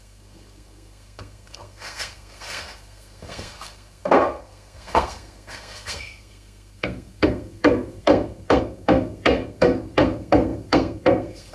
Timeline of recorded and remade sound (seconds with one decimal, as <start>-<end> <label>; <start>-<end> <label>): 0.0-11.5 remade